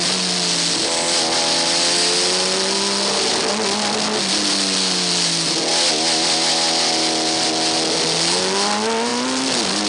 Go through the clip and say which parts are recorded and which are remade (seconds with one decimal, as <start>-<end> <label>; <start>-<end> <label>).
0.0-5.7 recorded; 5.7-6.5 remade; 6.5-9.9 recorded